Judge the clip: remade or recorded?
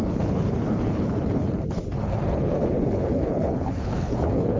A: remade